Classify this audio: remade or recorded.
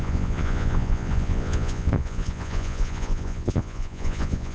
remade